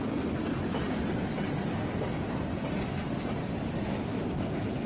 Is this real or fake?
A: real